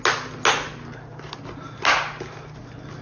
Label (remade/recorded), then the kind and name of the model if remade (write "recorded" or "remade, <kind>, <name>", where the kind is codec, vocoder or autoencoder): recorded